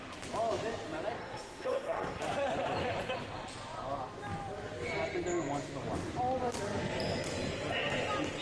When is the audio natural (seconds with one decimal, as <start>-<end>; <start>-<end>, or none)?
0.0-1.2; 2.2-8.4